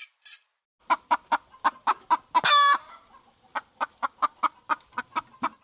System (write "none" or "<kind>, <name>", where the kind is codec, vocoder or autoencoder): none